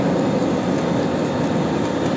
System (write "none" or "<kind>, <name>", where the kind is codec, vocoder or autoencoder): none